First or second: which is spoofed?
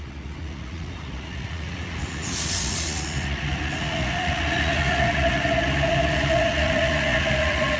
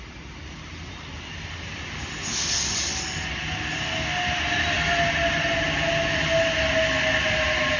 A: first